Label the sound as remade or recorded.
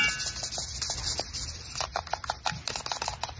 recorded